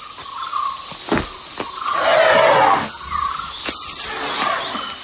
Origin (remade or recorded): recorded